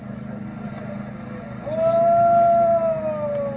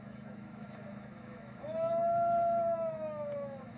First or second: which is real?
first